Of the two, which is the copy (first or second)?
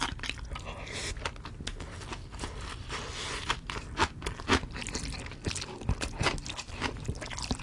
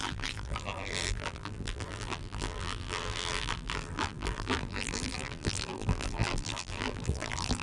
second